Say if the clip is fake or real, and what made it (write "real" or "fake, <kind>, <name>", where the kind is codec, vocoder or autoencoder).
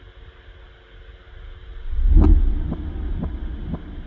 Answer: real